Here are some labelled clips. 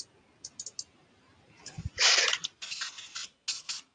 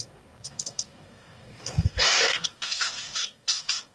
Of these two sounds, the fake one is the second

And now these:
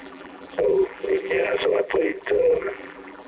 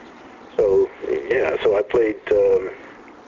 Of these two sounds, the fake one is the first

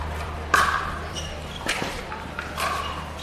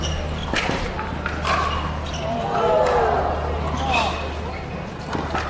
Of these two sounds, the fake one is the first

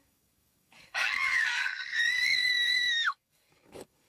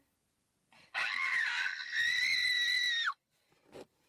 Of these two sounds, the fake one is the first